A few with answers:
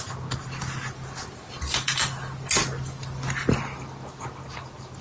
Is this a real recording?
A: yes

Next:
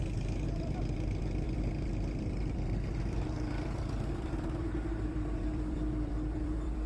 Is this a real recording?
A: no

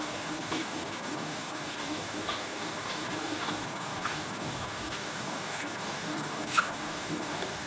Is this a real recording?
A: no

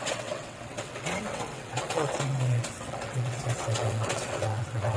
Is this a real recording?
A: no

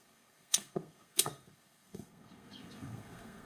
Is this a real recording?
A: no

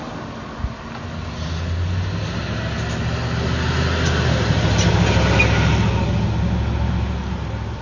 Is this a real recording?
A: yes